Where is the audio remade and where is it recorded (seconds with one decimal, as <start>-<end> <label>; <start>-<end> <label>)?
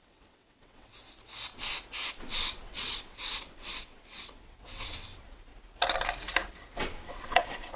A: 0.0-0.9 remade; 0.9-2.3 recorded; 2.3-5.5 remade; 5.5-6.5 recorded; 6.5-7.8 remade